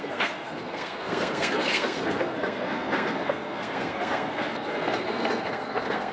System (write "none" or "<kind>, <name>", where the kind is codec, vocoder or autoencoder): codec, SNAC